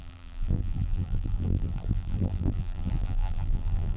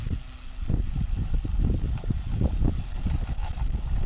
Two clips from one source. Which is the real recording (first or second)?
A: second